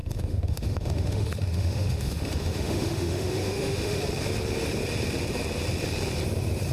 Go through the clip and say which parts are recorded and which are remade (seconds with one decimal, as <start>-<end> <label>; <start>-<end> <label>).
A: 0.0-4.0 remade; 4.0-6.7 recorded